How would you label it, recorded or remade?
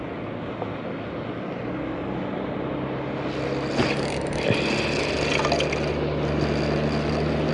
recorded